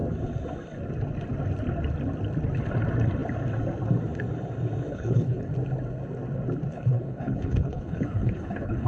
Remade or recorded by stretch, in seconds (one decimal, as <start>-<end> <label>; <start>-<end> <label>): 0.0-4.9 recorded; 4.9-5.5 remade; 5.5-6.7 recorded; 6.7-8.9 remade

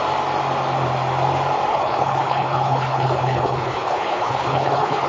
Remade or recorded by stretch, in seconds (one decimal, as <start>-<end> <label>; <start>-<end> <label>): 0.0-1.7 recorded; 1.7-5.1 remade